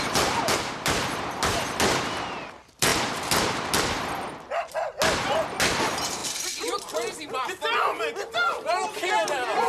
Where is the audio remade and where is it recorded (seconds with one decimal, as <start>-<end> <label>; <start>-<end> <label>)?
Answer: 0.0-9.7 recorded